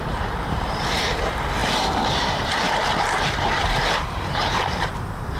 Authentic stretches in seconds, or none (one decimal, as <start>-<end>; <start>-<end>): none